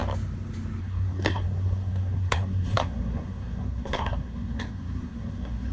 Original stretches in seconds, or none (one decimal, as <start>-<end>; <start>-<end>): 0.0-0.8